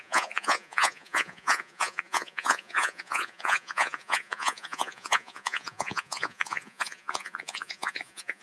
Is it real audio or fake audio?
fake